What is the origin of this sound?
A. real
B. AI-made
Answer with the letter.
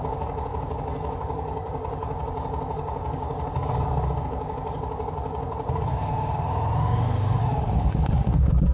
B